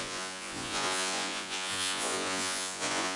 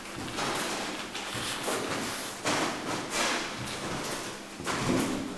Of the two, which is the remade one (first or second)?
first